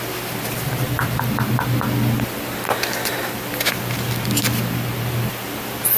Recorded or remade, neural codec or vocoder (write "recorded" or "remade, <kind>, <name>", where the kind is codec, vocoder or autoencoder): remade, vocoder, BigVGAN v2